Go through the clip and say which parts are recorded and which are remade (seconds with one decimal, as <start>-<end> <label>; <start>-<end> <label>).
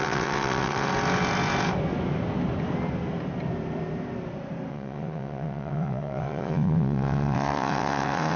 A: 0.0-0.9 remade; 0.9-4.7 recorded; 4.7-8.4 remade